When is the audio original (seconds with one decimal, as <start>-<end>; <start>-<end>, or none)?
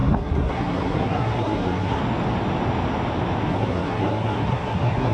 2.0-3.5